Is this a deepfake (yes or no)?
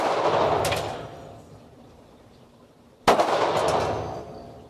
no